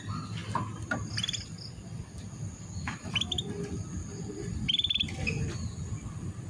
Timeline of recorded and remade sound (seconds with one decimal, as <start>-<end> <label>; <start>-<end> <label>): 0.0-6.5 recorded